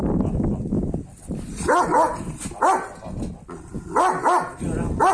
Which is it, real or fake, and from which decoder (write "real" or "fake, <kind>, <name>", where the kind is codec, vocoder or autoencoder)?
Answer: real